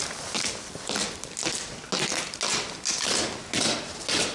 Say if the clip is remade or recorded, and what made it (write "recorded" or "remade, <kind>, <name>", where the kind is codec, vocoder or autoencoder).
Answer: recorded